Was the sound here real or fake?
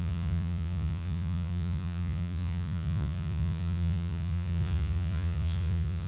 fake